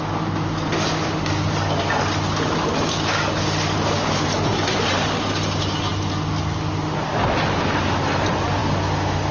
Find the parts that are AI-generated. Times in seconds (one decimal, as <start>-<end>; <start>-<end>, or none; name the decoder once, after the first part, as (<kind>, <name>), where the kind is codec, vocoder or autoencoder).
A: none